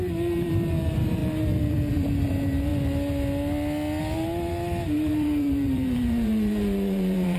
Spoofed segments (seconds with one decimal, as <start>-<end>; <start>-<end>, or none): 0.0-2.7; 4.0-7.4